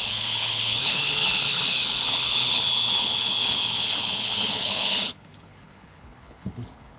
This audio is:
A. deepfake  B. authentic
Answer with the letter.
A